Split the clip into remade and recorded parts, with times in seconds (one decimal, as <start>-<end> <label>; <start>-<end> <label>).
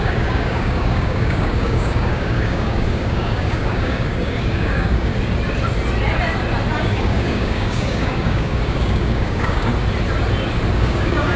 0.0-5.1 remade; 5.1-6.8 recorded; 6.8-9.7 remade; 9.7-10.7 recorded; 10.7-11.4 remade